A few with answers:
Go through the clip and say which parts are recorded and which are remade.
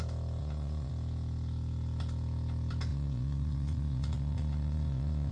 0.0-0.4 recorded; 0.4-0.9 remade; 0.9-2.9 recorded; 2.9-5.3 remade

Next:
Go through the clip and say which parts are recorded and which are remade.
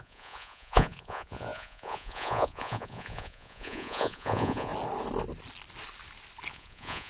0.0-4.7 remade; 4.7-6.5 recorded; 6.5-7.1 remade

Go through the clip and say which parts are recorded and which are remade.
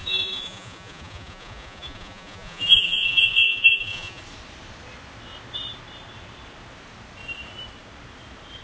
0.0-4.2 remade; 4.2-8.6 recorded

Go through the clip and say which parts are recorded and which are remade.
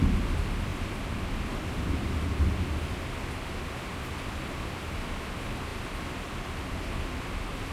0.0-7.7 recorded